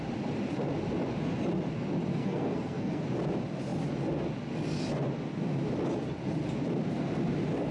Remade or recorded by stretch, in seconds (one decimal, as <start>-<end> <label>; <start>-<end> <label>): 0.0-2.1 recorded; 2.1-3.0 remade; 3.0-7.7 recorded